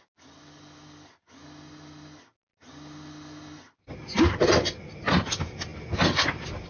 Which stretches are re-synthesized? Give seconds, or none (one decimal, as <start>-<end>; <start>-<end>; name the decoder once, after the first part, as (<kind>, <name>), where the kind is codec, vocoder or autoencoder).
none